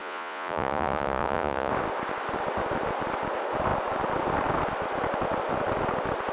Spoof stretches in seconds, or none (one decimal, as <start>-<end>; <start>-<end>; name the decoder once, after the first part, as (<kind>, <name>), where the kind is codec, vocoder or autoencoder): 0.0-1.7 (vocoder, Vocos)